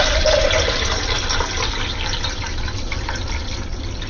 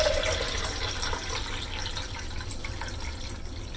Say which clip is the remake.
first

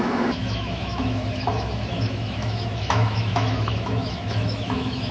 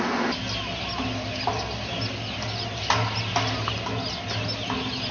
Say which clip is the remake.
first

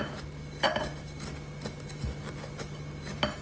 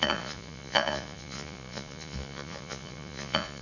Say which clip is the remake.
second